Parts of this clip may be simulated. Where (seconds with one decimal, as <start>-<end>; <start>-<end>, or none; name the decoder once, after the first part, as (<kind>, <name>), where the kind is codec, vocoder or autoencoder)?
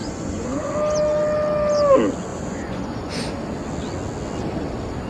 0.0-0.7 (vocoder, Vocos); 2.3-3.2